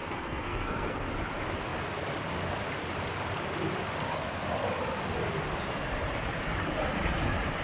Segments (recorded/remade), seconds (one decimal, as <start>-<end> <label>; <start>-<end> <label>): 0.0-1.1 remade; 1.1-7.6 recorded